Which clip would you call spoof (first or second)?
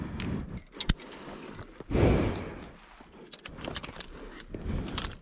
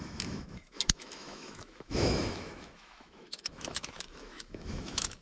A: second